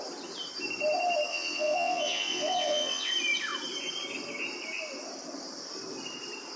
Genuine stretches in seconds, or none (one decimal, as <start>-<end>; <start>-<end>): 0.0-1.3; 3.1-6.6